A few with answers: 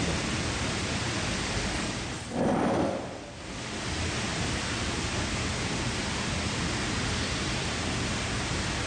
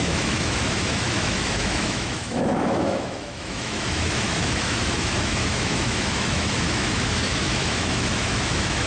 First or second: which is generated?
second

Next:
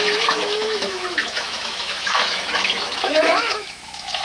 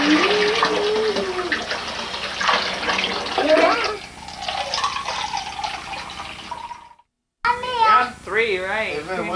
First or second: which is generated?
first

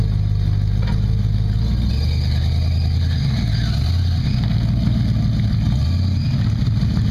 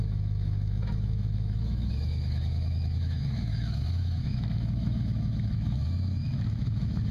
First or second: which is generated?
second